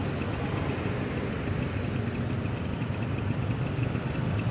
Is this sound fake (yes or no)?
no